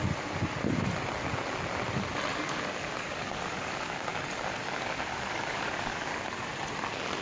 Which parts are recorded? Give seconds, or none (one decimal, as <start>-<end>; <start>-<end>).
0.0-2.3; 4.1-4.6; 6.5-7.2